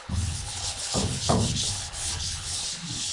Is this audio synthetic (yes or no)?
yes